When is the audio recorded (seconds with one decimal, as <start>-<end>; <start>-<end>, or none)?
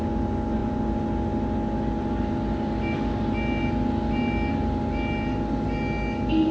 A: 0.0-6.5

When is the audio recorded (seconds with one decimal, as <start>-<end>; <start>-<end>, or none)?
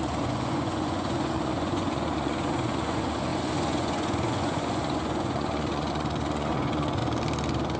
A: 7.0-7.8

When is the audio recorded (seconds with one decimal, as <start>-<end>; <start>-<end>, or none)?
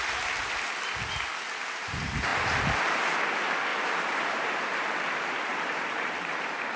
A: 0.0-3.7; 4.5-5.5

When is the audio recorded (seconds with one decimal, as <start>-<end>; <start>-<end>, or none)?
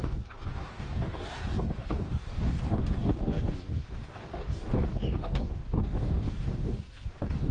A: none